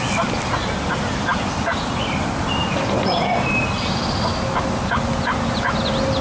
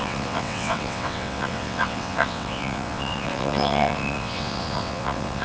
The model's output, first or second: second